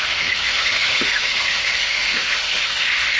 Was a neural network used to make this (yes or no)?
yes